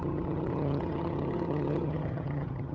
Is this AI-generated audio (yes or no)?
yes